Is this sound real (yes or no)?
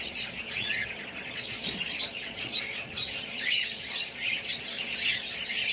no